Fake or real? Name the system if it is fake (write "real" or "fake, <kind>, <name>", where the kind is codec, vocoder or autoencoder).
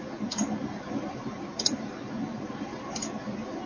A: real